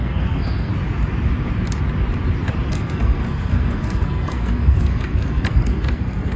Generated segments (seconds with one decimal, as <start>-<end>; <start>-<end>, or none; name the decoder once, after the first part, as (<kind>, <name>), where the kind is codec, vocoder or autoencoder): 0.0-0.7 (codec, SNAC); 2.7-6.4